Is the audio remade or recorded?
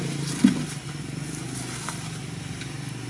recorded